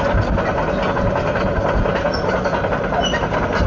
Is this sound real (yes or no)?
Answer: yes